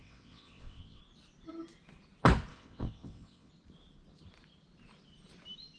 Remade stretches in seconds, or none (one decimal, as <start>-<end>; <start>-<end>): 0.0-1.0; 2.5-3.5